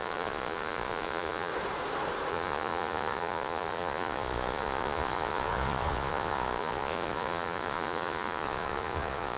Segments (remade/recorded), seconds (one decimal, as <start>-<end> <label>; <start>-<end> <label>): 0.0-1.5 remade; 1.5-2.3 recorded; 2.3-9.4 remade